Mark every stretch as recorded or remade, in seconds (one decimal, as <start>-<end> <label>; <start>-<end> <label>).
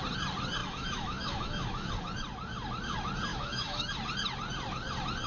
0.0-0.6 recorded; 0.6-1.9 remade; 1.9-3.3 recorded; 3.3-3.9 remade; 3.9-5.3 recorded